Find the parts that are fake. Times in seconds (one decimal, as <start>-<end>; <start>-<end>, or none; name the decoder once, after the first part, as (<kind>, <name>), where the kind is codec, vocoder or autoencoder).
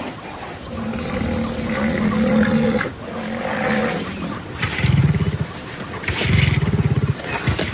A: none